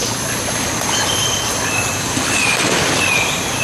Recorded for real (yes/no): no